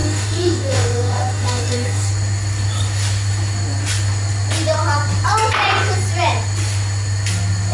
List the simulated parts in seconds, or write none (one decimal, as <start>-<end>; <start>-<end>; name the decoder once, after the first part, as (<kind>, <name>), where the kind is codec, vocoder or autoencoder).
0.0-2.1 (codec, DAC)